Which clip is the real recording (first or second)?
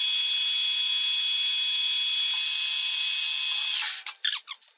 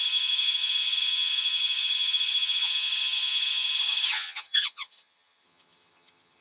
first